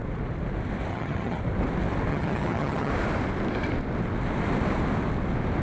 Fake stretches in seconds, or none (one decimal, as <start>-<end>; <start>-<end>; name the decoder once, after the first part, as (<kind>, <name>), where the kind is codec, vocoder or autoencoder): 0.9-1.4 (vocoder, HiFi-GAN); 2.1-2.9